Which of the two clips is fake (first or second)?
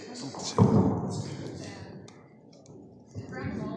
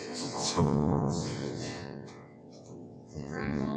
second